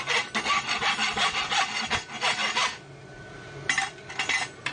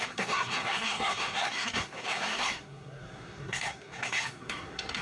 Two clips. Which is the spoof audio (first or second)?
second